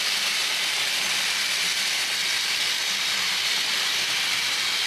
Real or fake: real